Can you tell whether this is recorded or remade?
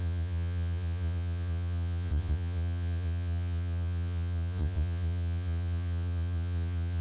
remade